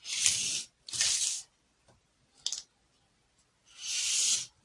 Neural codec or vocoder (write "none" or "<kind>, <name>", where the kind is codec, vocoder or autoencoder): none